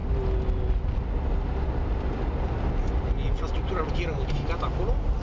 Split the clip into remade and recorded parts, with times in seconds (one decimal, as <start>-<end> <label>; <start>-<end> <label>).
0.0-5.2 recorded